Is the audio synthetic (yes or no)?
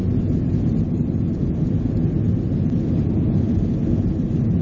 no